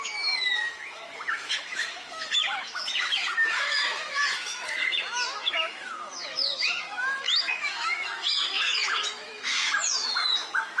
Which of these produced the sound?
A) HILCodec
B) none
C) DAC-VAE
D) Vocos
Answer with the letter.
C